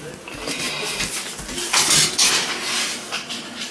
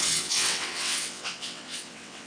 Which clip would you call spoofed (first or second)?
second